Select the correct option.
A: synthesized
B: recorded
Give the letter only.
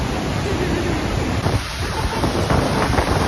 A